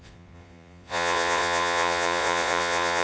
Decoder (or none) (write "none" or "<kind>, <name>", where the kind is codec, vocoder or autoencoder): vocoder, Vocos